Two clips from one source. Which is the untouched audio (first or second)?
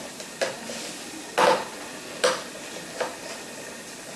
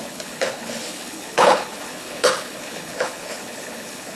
first